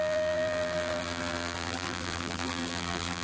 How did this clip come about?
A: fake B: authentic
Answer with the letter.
A